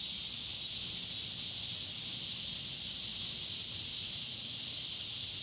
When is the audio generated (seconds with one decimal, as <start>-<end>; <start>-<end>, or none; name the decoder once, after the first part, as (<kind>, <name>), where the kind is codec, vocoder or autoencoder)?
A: 3.1-5.4 (vocoder, BigVGAN v2)